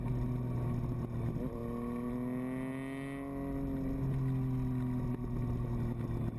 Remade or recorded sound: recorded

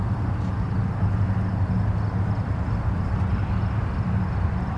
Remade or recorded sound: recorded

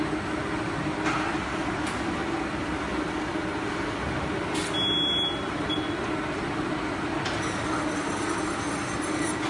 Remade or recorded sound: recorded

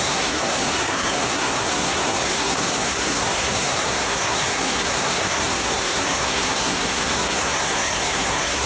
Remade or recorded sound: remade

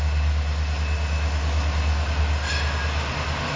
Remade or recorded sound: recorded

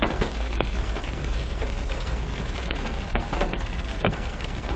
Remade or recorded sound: remade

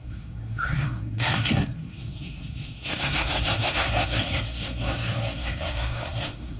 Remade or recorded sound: remade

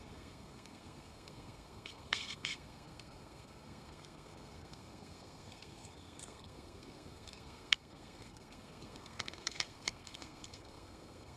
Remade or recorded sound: remade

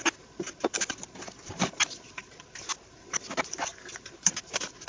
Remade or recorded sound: recorded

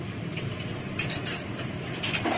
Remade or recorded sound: recorded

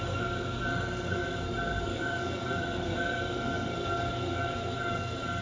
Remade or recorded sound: remade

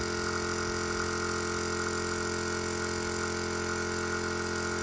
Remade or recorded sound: recorded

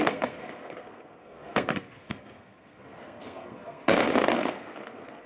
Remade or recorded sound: remade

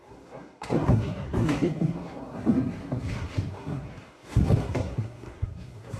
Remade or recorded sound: remade